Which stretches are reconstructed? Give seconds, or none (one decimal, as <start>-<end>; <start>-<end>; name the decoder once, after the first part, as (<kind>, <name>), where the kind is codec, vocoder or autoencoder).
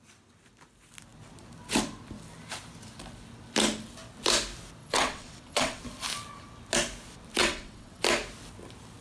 4.8-5.8 (vocoder, WaveNeXt); 7.4-8.0